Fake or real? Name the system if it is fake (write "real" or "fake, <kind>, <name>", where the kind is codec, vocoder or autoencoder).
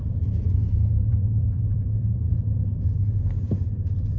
fake, vocoder, BigVGAN v2